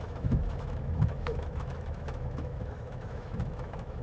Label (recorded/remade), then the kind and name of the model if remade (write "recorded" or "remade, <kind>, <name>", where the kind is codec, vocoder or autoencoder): remade, autoencoder, DAC-VAE